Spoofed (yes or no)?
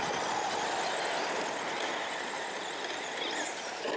no